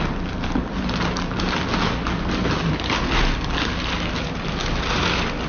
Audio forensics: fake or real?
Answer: real